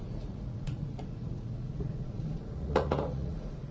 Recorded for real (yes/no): no